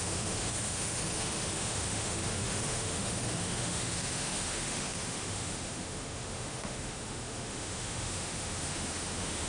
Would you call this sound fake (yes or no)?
yes